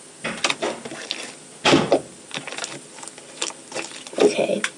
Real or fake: real